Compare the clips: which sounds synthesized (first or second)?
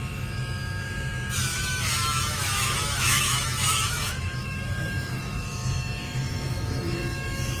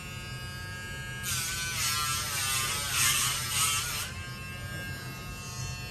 first